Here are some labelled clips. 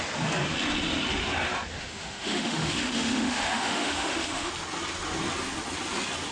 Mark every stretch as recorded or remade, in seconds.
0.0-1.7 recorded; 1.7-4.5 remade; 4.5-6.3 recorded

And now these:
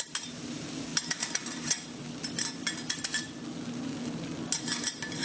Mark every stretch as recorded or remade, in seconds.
0.0-5.2 recorded

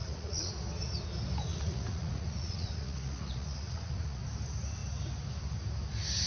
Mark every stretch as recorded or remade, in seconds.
0.0-0.5 remade; 0.5-1.5 recorded; 1.5-4.2 remade; 4.2-6.3 recorded

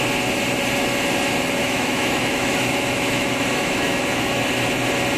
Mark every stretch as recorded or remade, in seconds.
0.0-1.6 recorded; 1.6-4.4 remade; 4.4-5.2 recorded

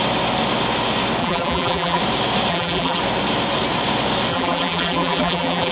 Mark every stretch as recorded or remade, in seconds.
0.0-1.2 recorded; 1.2-2.0 remade; 2.0-2.5 recorded; 2.5-3.0 remade; 3.0-4.3 recorded; 4.3-5.7 remade

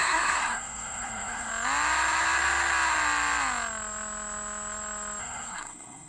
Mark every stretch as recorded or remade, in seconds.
0.0-1.5 remade; 1.5-5.2 recorded; 5.2-6.1 remade

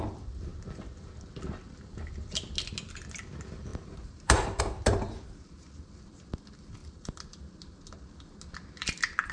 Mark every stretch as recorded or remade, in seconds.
0.0-3.7 recorded; 3.7-4.6 remade; 4.6-6.8 recorded; 6.8-7.4 remade; 7.4-9.3 recorded

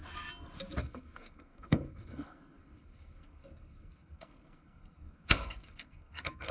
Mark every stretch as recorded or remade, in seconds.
0.0-0.8 recorded; 0.8-6.5 remade